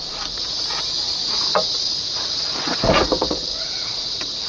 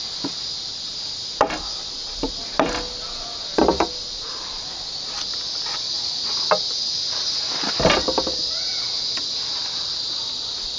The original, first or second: second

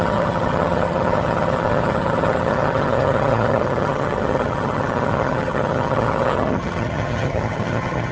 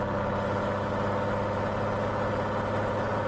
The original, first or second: second